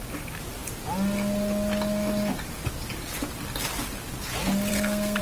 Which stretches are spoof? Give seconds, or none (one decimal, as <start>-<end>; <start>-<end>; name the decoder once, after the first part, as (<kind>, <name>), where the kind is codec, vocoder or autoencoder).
4.7-5.2 (codec, SNAC)